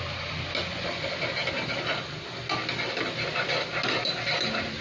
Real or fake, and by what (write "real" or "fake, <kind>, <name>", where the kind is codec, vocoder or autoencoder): real